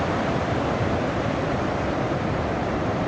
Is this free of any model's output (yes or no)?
no